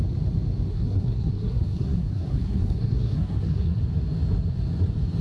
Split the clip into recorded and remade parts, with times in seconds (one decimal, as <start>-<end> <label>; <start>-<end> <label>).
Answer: 0.0-0.7 recorded; 0.7-3.8 remade; 3.8-5.2 recorded